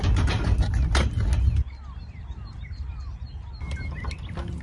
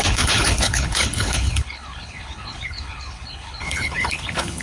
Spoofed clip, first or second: second